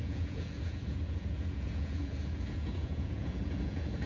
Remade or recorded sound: remade